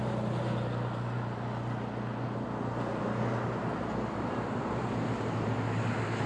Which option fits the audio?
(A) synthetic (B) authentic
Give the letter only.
B